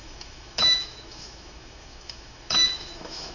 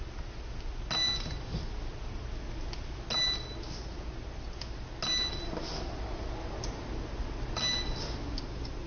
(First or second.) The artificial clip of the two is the first